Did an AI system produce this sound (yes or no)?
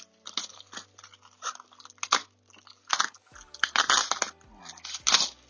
no